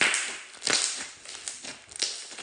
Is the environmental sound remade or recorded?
recorded